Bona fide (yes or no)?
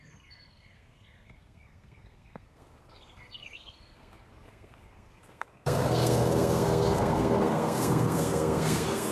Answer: no